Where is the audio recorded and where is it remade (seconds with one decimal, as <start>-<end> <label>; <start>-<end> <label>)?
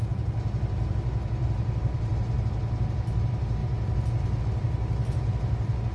0.0-5.9 recorded